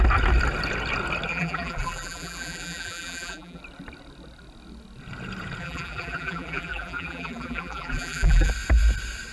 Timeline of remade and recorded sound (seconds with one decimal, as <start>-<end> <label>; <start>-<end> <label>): 0.0-1.3 recorded; 1.3-3.6 remade; 3.6-5.6 recorded; 5.6-8.5 remade; 8.5-9.3 recorded